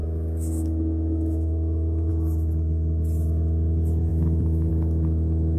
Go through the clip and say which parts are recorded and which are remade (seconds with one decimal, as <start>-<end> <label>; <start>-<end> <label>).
0.0-2.1 remade; 2.1-4.1 recorded; 4.1-4.7 remade; 4.7-5.6 recorded